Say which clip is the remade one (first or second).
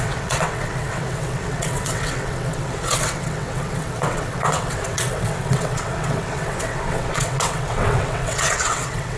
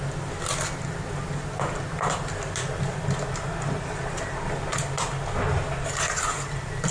first